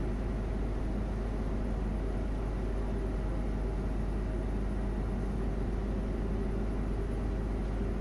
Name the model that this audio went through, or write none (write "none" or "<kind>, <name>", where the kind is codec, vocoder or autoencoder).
none